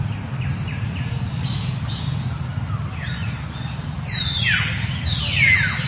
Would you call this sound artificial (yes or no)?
no